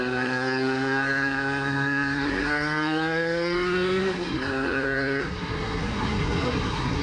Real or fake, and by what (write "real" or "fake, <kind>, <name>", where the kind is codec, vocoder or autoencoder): fake, codec, SNAC